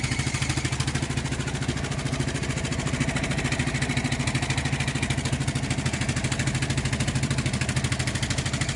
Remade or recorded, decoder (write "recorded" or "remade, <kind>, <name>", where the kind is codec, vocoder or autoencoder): recorded